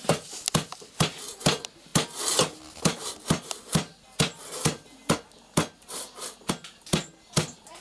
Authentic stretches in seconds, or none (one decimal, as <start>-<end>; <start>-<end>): 0.0-7.8